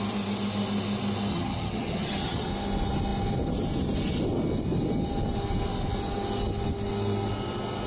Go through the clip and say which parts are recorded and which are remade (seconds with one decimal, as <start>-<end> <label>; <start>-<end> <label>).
0.0-1.3 recorded; 1.3-2.5 remade; 2.5-7.9 recorded